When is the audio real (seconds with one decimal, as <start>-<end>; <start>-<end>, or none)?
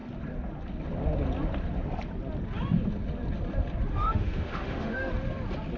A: 0.0-3.9; 5.1-5.8